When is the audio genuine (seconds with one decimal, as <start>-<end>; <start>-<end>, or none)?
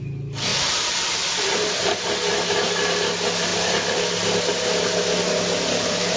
0.0-6.2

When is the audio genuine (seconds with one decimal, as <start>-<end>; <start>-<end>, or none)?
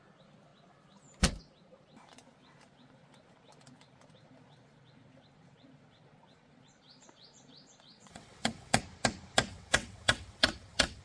0.0-7.9; 8.8-9.5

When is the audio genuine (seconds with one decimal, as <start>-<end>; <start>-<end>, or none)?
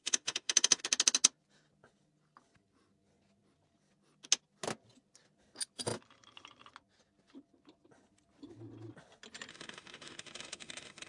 0.8-9.5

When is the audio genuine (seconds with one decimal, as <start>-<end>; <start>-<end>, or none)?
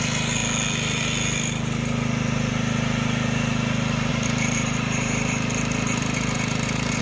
0.0-4.1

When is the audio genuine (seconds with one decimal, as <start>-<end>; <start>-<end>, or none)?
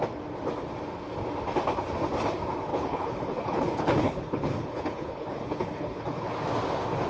0.0-2.7; 6.3-7.1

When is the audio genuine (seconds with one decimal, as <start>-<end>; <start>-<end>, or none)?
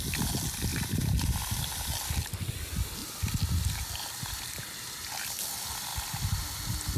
0.0-0.7; 1.6-3.0; 4.6-5.9; 6.4-7.0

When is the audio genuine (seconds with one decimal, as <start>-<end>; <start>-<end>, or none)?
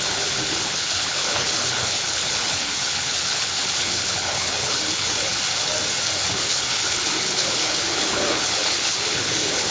5.3-6.3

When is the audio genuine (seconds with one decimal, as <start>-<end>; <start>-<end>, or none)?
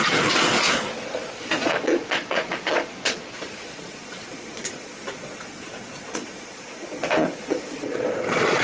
none